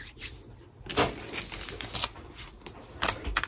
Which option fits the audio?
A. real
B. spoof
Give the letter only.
A